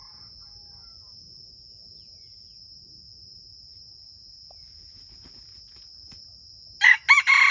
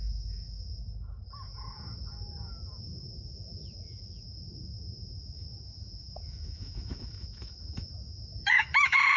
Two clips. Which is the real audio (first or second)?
first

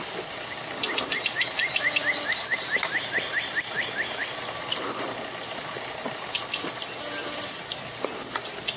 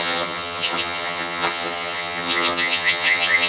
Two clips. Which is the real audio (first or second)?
first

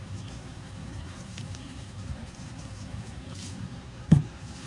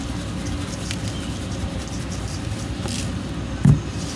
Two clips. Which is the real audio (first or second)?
second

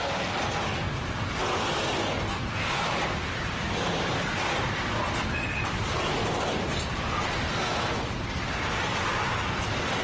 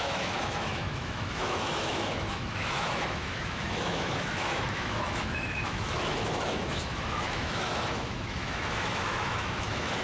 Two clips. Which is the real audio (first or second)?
first